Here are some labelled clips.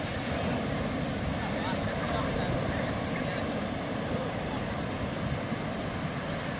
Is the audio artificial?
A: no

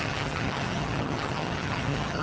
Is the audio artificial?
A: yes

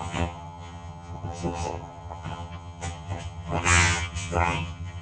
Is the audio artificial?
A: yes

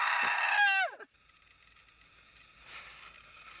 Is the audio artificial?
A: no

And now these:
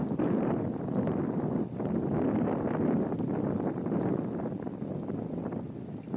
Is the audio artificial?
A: no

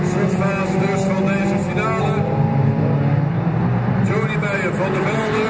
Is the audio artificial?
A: no